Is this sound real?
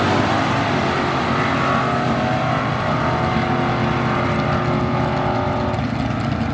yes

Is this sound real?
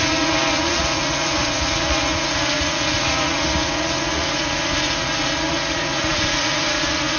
no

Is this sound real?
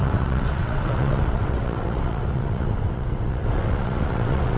no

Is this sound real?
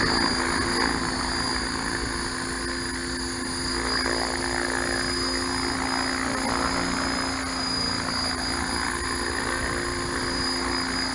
yes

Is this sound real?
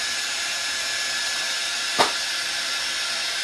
yes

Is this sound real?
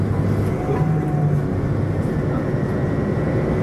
yes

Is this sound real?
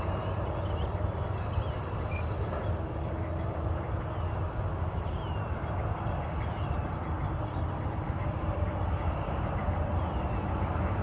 no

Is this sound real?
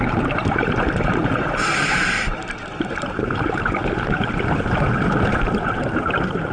yes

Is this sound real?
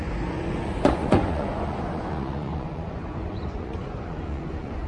no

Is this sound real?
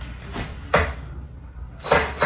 yes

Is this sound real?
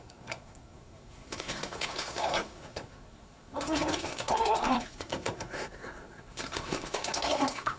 no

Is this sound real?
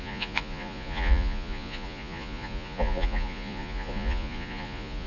no